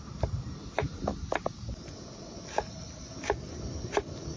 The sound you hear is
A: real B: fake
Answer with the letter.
A